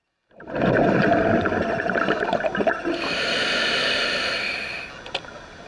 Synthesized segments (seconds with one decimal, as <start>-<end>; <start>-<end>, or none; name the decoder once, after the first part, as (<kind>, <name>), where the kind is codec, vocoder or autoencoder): none